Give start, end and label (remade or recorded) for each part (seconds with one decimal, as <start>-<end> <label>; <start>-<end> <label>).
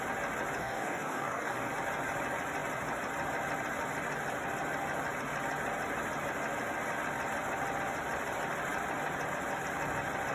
0.0-0.6 recorded; 0.6-1.7 remade; 1.7-10.3 recorded